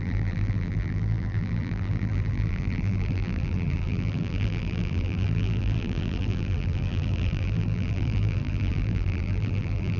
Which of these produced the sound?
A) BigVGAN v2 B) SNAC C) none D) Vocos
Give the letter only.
A